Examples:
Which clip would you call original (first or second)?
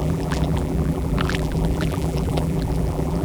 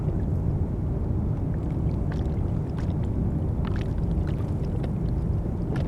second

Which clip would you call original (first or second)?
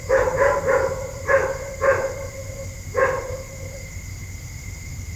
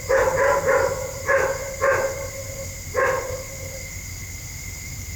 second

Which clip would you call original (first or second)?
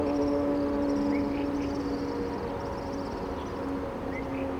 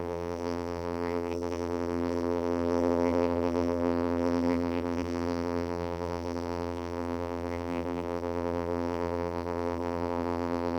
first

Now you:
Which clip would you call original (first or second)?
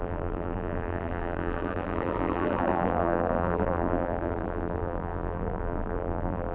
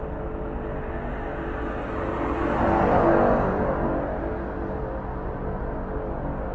second